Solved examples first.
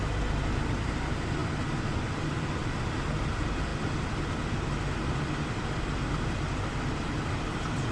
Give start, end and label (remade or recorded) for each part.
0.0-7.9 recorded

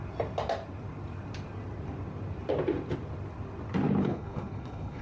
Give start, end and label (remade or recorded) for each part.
0.0-4.0 recorded; 4.0-5.0 remade

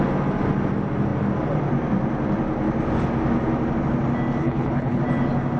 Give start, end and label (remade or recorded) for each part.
0.0-4.4 recorded; 4.4-5.0 remade; 5.0-5.6 recorded

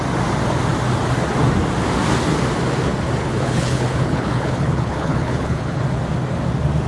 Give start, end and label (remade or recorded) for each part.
0.0-3.2 recorded; 3.2-5.8 remade; 5.8-6.9 recorded

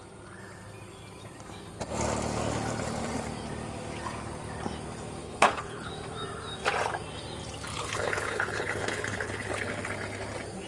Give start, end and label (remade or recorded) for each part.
0.0-5.2 recorded; 5.2-5.9 remade; 5.9-7.7 recorded; 7.7-9.9 remade; 9.9-10.7 recorded

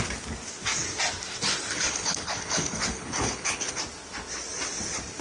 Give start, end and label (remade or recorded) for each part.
0.0-1.7 recorded; 1.7-3.8 remade; 3.8-5.2 recorded

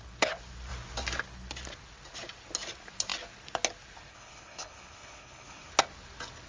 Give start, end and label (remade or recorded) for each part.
0.0-4.1 recorded; 4.1-5.7 remade; 5.7-6.5 recorded

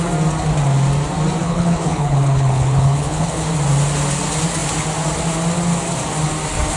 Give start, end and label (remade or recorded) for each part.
0.0-1.4 recorded; 1.4-3.5 remade; 3.5-6.8 recorded